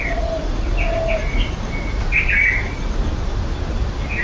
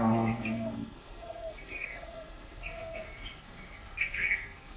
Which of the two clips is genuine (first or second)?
first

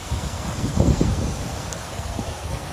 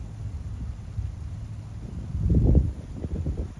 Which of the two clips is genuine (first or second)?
second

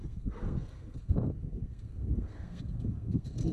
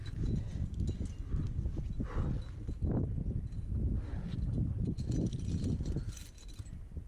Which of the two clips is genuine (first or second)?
second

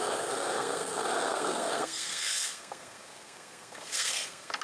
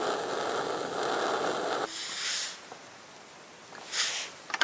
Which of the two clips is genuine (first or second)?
second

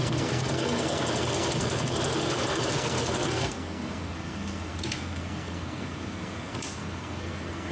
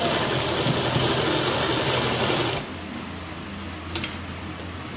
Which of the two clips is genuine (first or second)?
second